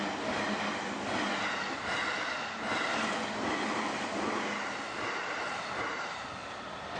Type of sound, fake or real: real